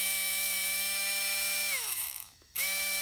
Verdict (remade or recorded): remade